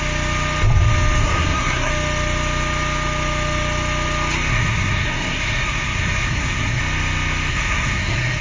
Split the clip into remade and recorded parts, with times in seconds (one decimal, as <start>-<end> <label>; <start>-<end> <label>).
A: 0.0-1.2 recorded; 1.2-1.9 remade; 1.9-4.5 recorded; 4.5-6.8 remade; 6.8-7.5 recorded; 7.5-8.4 remade

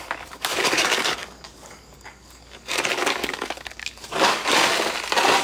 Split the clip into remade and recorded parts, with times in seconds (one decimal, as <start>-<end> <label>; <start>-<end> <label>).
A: 0.0-4.4 remade; 4.4-5.4 recorded

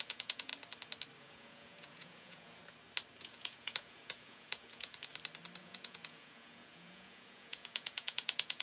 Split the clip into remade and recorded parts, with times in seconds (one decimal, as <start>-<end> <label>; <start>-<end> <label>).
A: 0.0-0.5 remade; 0.5-1.2 recorded; 1.2-2.6 remade; 2.6-3.2 recorded; 3.2-5.1 remade; 5.1-5.6 recorded; 5.6-8.6 remade

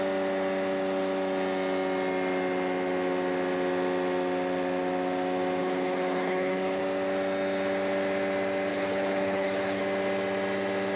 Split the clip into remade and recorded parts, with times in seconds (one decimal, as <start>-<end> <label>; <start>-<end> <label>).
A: 0.0-5.6 recorded; 5.6-6.8 remade; 6.8-8.7 recorded; 8.7-9.8 remade; 9.8-11.0 recorded

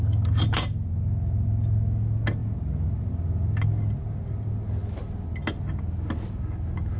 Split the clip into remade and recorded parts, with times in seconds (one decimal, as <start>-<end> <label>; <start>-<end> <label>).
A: 0.0-7.0 recorded

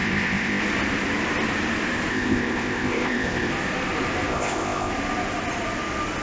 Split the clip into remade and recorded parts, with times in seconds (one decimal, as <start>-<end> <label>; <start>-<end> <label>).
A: 0.0-0.6 remade; 0.6-2.1 recorded; 2.1-3.5 remade; 3.5-4.3 recorded; 4.3-4.9 remade; 4.9-6.2 recorded